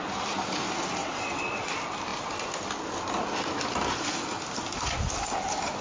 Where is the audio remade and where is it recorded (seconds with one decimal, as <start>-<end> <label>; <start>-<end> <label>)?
0.0-1.0 recorded; 1.0-1.7 remade; 1.7-5.8 recorded